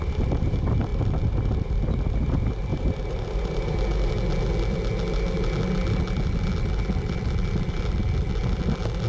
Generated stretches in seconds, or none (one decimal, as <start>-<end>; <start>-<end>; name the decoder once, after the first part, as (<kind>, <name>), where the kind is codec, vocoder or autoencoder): 2.7-3.7 (vocoder, BigVGAN v2)